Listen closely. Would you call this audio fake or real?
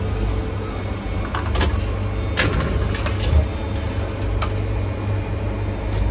real